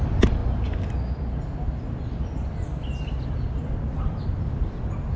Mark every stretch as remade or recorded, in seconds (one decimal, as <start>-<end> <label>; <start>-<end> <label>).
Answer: 0.0-5.2 recorded